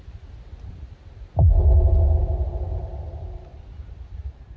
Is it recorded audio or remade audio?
recorded